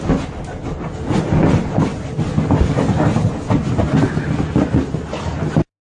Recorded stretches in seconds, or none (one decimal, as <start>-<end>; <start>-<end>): 0.0-5.9